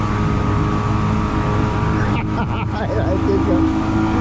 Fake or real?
real